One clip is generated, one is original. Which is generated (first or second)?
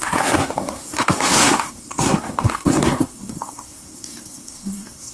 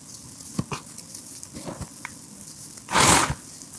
first